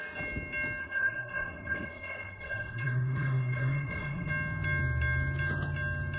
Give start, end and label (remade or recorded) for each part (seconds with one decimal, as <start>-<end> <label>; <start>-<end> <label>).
0.0-0.8 recorded; 0.8-4.3 remade; 4.3-6.2 recorded